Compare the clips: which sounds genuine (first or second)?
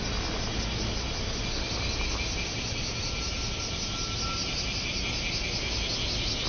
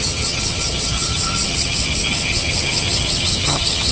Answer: first